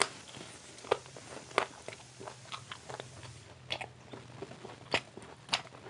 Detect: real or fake real